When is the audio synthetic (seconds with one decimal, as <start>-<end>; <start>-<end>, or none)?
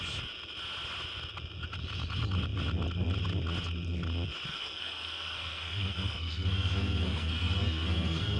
4.5-8.4